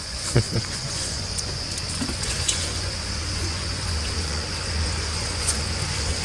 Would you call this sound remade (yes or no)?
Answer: yes